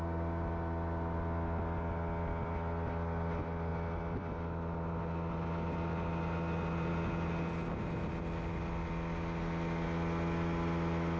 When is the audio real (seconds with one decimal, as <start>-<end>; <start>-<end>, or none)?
0.0-11.2